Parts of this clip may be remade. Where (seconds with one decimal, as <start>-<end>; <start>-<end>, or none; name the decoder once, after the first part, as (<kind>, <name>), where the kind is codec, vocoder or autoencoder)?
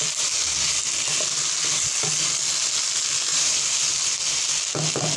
3.3-4.1 (vocoder, BigVGAN v2)